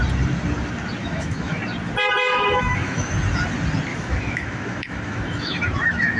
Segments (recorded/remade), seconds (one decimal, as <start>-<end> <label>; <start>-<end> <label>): 0.0-1.0 recorded; 1.0-1.6 remade; 1.6-2.3 recorded; 2.3-3.1 remade; 3.1-3.9 recorded; 3.9-6.2 remade